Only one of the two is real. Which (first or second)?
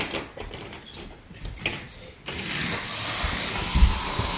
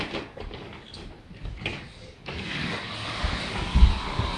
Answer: first